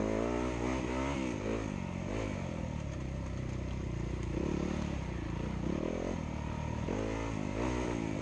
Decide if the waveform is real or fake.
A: real